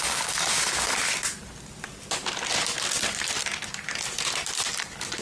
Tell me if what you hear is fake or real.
real